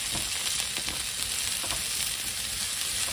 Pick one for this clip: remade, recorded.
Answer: recorded